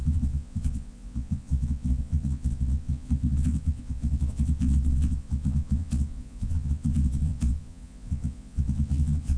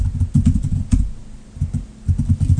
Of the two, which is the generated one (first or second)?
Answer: first